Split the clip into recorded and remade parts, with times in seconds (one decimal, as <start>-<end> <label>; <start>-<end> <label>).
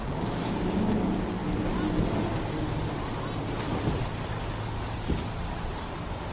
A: 0.0-6.3 recorded